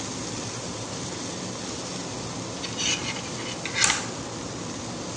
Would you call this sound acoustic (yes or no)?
yes